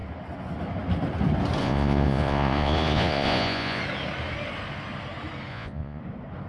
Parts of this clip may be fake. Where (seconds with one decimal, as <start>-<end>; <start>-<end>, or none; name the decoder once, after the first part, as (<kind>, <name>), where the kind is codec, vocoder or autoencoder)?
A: 1.6-3.8 (vocoder, Vocos); 5.5-6.0